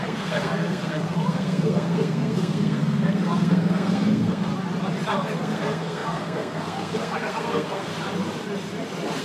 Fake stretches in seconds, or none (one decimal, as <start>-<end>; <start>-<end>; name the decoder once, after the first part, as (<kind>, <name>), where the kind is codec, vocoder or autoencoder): 0.0-4.5 (codec, SNAC); 5.1-7.9

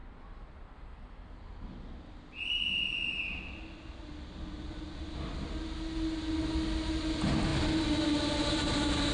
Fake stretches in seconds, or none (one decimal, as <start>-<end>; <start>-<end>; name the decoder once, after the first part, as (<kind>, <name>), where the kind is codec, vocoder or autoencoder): none

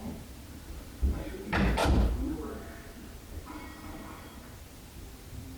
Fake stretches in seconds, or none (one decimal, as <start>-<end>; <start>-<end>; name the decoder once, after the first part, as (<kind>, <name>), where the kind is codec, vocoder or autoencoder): 0.0-1.8 (vocoder, BigVGAN v2); 4.7-5.6